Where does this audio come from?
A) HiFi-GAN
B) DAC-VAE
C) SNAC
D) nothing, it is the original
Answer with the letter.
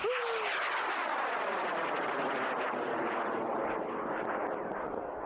D